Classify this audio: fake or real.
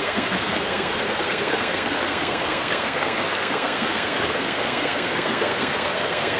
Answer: fake